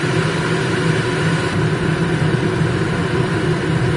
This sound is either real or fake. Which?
real